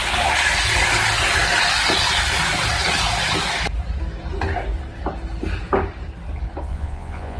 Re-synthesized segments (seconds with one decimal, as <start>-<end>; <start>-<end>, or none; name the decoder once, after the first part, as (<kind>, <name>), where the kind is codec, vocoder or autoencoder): 6.7-7.4 (vocoder, Vocos)